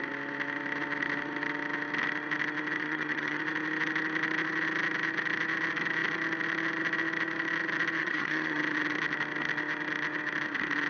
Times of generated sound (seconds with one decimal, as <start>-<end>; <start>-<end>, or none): 2.8-3.4; 8.0-8.6